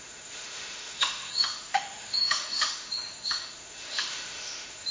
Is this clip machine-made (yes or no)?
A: yes